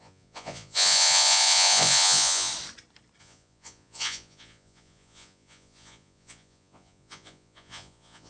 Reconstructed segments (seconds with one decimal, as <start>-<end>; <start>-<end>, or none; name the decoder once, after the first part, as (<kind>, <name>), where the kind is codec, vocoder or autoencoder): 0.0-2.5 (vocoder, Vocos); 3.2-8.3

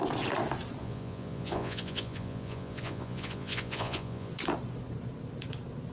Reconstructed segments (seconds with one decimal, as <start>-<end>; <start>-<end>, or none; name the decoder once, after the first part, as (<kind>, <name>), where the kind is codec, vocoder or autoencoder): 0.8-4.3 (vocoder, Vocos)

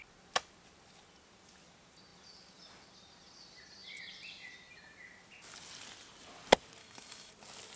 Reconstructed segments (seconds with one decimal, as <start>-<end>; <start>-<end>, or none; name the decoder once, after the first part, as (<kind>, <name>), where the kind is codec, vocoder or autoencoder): 6.8-7.3 (autoencoder, DAC-VAE)

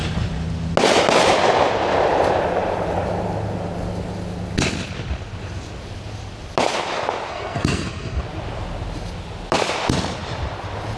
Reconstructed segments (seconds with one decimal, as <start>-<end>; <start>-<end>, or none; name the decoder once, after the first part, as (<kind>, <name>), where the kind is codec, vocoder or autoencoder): 7.3-8.2 (codec, SNAC)

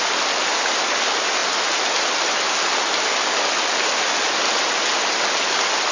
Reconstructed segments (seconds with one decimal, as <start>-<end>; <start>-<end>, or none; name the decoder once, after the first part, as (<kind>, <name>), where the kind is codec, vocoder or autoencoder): none

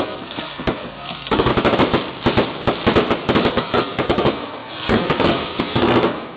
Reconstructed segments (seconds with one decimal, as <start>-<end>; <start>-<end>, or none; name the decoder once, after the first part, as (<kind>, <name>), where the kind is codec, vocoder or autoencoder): 0.0-1.5 (codec, SNAC); 3.5-6.4

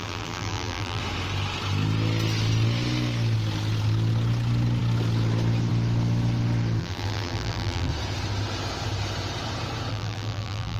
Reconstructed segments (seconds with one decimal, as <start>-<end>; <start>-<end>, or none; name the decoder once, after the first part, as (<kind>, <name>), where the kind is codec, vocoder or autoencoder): 0.0-1.0 (vocoder, BigVGAN v2); 6.8-7.9; 9.9-10.8

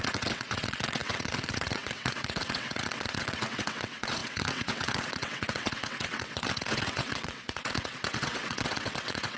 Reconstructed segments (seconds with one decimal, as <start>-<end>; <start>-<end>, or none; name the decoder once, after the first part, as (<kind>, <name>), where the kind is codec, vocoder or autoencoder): 0.0-9.4 (vocoder, WaveNeXt)